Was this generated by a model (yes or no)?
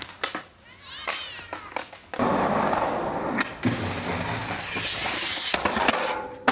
no